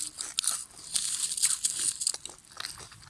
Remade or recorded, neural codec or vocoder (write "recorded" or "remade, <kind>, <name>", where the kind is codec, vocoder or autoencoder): recorded